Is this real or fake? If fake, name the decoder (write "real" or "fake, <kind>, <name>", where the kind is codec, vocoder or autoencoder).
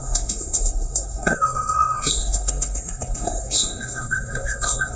fake, codec, SNAC